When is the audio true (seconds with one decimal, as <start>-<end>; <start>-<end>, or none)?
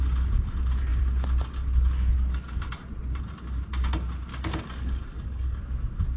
0.0-4.3; 5.6-6.2